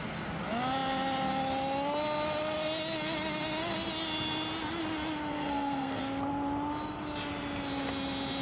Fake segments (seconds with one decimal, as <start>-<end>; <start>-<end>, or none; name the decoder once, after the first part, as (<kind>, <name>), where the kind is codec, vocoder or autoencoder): 5.3-6.0 (codec, SNAC)